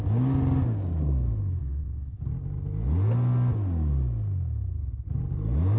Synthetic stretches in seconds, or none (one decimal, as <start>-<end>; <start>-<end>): 1.6-2.2